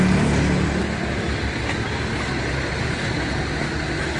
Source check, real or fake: real